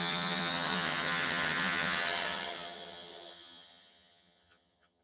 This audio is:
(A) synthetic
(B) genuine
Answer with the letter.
A